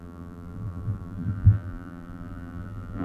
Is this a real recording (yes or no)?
no